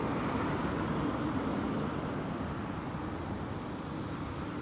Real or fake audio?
real